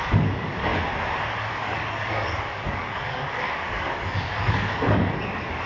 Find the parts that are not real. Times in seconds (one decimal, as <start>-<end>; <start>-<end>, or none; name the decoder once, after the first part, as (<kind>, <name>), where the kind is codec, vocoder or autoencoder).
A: 0.0-0.7 (codec, DAC); 1.5-5.7